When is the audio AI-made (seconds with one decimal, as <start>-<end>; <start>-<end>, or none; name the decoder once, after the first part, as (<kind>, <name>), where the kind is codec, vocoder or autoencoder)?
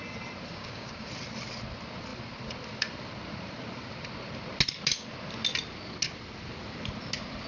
0.5-1.1 (codec, DAC)